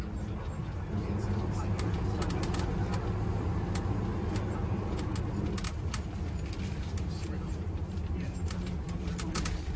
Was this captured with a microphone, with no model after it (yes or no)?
yes